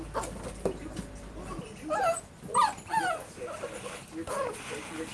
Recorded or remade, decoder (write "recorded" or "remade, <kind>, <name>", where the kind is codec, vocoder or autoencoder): recorded